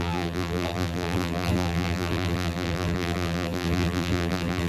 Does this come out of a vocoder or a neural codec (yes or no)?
yes